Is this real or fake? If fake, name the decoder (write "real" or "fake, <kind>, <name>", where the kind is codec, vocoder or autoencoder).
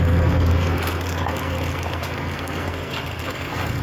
fake, codec, SNAC